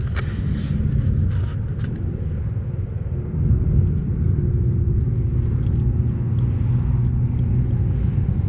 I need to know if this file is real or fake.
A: real